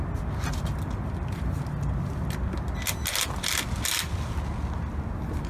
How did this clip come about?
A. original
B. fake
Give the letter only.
A